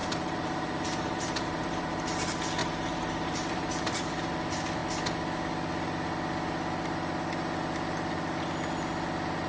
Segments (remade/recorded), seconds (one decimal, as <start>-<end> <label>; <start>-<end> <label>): 0.0-1.9 remade; 1.9-2.6 recorded; 2.6-4.3 remade; 4.3-9.5 recorded